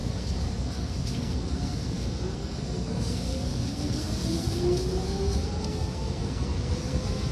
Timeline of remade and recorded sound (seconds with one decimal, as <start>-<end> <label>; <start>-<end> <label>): 0.0-7.3 remade